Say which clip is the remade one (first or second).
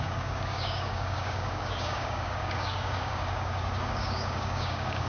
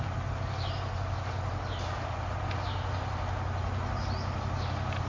first